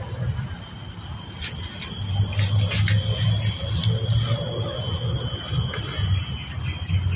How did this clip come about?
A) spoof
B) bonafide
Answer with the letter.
B